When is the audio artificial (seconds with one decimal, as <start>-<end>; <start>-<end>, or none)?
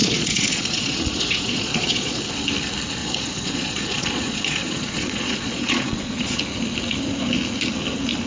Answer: 0.0-2.2; 3.0-6.4